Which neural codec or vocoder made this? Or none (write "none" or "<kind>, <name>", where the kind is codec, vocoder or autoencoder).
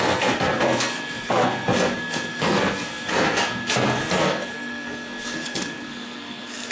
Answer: codec, SNAC